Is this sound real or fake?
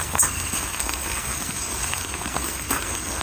fake